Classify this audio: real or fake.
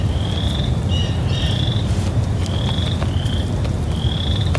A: real